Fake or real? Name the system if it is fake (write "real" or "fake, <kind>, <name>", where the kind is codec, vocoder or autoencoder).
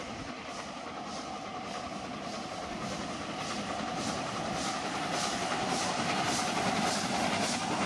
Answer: fake, vocoder, BigVGAN v2